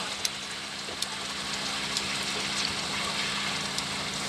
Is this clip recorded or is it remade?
recorded